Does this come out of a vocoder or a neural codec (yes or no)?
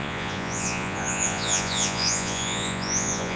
yes